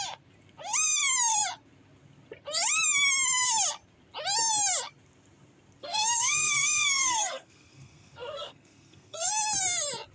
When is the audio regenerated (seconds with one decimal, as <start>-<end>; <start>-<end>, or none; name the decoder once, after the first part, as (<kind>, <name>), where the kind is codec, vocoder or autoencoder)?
5.8-9.3 (codec, SNAC)